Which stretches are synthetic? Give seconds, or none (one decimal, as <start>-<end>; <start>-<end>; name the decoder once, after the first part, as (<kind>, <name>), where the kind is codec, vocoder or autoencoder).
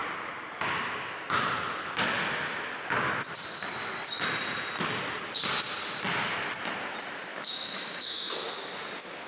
7.3-8.4 (autoencoder, DAC-VAE)